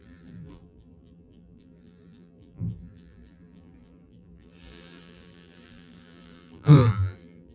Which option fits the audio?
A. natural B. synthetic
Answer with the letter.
B